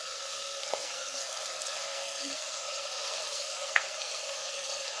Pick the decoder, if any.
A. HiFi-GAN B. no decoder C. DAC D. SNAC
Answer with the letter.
D